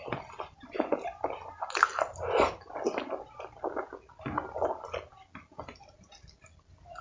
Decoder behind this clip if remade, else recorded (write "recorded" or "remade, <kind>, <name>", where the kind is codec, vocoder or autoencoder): recorded